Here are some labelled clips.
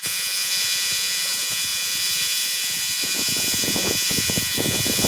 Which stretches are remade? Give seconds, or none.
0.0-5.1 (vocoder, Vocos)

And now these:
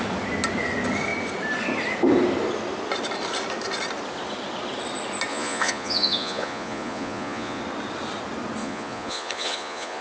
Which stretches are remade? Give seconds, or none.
5.3-7.6 (vocoder, Vocos); 8.6-10.0